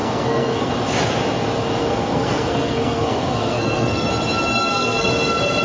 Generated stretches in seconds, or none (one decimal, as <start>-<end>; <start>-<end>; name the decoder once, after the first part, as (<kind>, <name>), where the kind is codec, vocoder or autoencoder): 0.0-0.7 (codec, SNAC); 1.8-4.1; 4.5-5.1